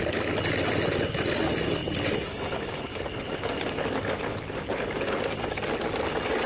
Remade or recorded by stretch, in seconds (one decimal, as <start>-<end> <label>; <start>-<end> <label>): 0.0-6.5 recorded